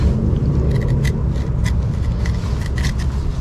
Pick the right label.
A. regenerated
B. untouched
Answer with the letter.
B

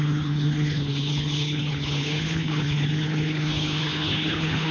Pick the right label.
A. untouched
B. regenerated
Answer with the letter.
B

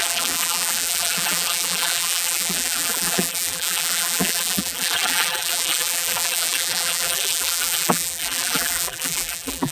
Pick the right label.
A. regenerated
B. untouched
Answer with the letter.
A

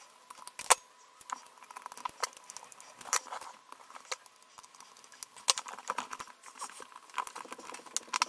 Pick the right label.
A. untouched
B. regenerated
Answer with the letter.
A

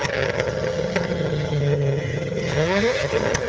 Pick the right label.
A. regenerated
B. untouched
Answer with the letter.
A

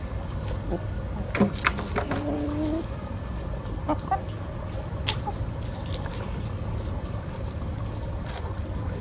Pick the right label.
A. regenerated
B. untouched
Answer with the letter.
B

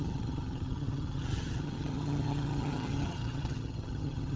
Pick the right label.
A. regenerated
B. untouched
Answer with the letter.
A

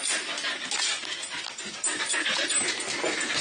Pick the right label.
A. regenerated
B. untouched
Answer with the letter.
B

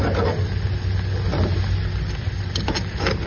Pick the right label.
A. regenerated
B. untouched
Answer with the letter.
B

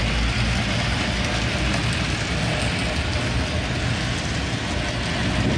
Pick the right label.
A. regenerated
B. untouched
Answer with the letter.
B